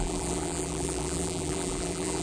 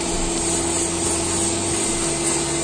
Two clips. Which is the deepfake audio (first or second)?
first